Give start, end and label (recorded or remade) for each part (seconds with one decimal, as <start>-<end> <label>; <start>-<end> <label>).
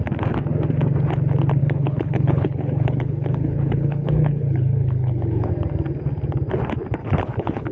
0.0-1.6 recorded; 1.6-5.5 remade; 5.5-7.0 recorded; 7.0-7.7 remade